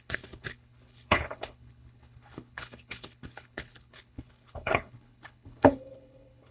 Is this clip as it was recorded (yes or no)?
no